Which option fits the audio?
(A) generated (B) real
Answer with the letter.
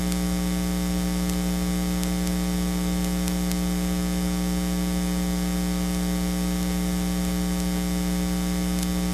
B